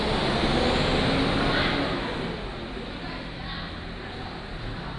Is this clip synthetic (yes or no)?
no